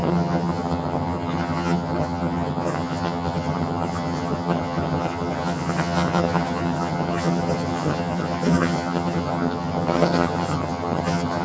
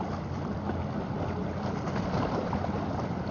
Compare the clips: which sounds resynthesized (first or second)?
first